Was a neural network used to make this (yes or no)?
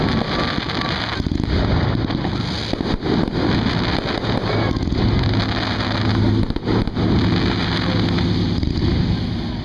no